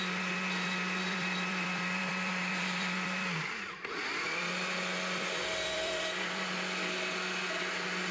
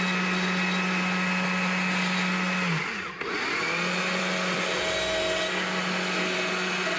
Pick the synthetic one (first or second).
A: first